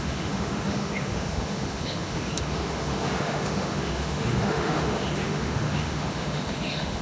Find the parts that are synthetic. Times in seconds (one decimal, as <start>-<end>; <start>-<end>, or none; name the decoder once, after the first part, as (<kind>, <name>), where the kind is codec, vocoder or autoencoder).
0.0-7.0 (autoencoder, DAC-VAE)